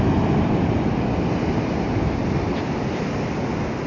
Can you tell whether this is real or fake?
real